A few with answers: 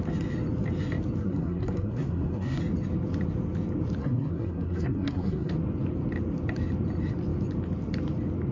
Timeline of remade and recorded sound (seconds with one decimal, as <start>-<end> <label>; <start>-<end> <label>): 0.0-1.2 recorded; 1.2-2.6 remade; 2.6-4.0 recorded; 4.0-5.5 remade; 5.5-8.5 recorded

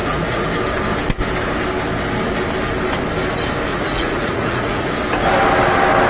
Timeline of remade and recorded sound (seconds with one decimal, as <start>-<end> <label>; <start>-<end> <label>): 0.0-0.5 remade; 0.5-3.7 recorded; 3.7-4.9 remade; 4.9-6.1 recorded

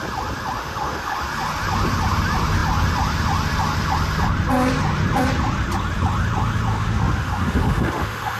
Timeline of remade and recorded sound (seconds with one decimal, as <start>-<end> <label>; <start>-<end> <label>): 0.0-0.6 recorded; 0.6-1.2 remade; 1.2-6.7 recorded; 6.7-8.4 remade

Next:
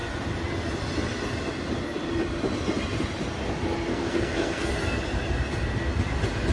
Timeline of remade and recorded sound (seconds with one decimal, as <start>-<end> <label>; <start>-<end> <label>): 0.0-3.9 recorded; 3.9-4.7 remade; 4.7-6.5 recorded